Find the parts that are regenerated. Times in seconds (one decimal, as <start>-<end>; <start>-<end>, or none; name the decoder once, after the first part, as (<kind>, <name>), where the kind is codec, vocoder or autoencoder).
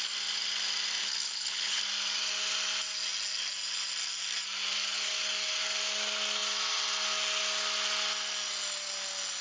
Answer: 1.0-1.8 (codec, HILCodec)